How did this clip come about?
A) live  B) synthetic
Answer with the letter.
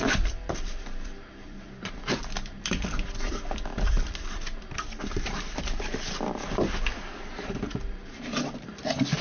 B